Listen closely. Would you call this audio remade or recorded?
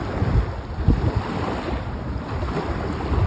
recorded